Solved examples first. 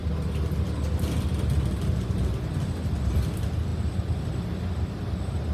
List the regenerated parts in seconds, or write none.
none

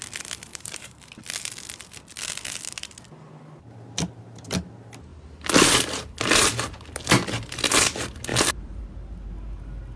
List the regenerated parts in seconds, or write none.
0.5-1.1 (vocoder, BigVGAN v2); 8.3-8.8